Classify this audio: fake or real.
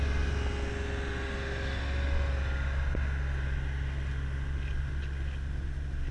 real